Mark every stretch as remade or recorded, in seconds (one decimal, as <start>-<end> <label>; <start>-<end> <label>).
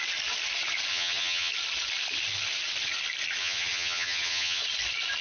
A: 0.0-0.9 recorded; 0.9-1.5 remade; 1.5-3.4 recorded; 3.4-4.6 remade; 4.6-5.2 recorded